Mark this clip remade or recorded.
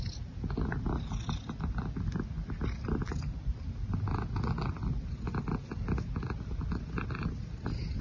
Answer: recorded